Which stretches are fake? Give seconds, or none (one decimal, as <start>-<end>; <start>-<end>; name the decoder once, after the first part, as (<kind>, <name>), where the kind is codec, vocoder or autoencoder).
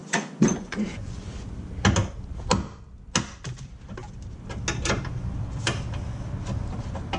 0.0-1.3 (vocoder, Vocos)